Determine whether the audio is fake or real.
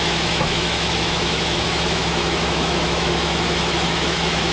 fake